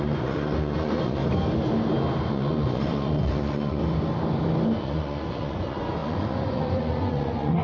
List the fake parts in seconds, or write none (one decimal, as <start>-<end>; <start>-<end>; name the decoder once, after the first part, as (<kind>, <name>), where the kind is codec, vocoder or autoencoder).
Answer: 0.0-1.2 (vocoder, Vocos); 2.3-3.8; 4.8-7.6